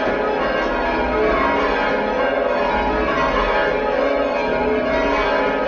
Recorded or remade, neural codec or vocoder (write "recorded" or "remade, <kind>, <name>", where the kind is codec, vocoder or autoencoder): recorded